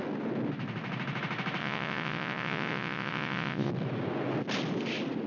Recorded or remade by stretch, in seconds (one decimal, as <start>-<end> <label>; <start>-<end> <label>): 0.0-1.6 recorded; 1.6-3.7 remade; 3.7-5.3 recorded